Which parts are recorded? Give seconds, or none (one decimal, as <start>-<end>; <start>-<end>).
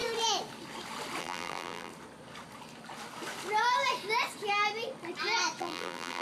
0.0-1.2; 1.9-5.6